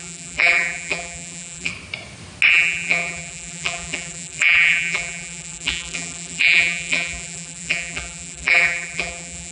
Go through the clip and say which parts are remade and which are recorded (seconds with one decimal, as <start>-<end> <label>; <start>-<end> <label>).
0.0-1.7 remade; 1.7-2.5 recorded; 2.5-9.5 remade

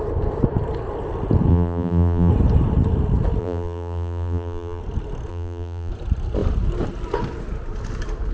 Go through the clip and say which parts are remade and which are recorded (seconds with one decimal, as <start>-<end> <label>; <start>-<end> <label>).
0.0-1.5 recorded; 1.5-2.3 remade; 2.3-3.4 recorded; 3.4-4.8 remade; 4.8-5.3 recorded; 5.3-5.9 remade; 5.9-8.3 recorded

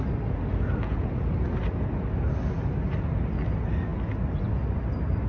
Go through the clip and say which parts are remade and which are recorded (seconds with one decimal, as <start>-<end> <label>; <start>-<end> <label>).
0.0-5.3 recorded